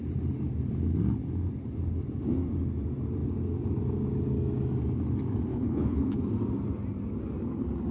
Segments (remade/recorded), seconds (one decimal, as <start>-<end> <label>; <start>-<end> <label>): 0.0-5.5 recorded; 5.5-6.2 remade; 6.2-7.9 recorded